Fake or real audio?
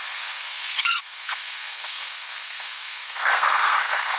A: fake